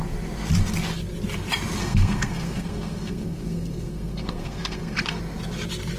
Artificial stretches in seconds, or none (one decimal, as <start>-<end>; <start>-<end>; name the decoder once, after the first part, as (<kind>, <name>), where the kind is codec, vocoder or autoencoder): 1.8-5.2 (codec, SNAC)